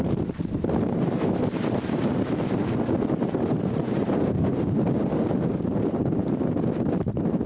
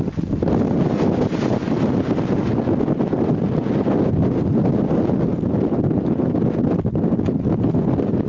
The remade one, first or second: first